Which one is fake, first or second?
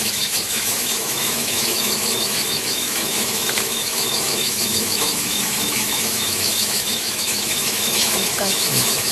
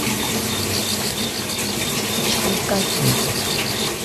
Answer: first